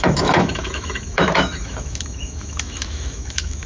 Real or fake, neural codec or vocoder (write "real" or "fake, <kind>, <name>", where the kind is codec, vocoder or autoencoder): fake, autoencoder, DAC-VAE